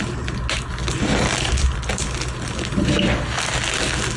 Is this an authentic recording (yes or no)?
yes